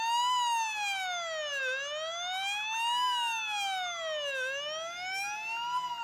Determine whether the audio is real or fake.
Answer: real